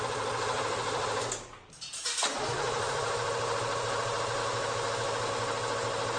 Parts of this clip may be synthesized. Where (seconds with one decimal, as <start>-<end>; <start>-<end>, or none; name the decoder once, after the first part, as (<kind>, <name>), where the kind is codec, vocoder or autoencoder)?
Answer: 4.4-5.3 (autoencoder, DAC-VAE)